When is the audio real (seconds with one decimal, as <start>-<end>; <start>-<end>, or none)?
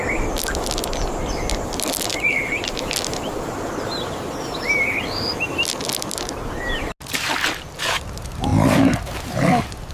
0.0-9.9